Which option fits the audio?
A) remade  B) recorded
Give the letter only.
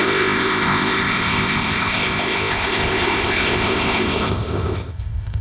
A